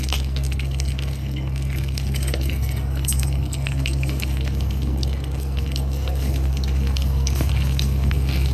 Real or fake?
fake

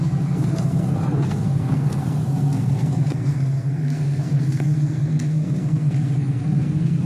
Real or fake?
fake